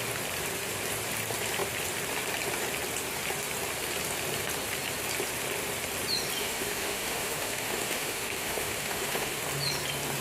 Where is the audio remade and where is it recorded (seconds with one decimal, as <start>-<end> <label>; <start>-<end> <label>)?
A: 0.0-6.4 recorded; 6.4-9.4 remade; 9.4-10.2 recorded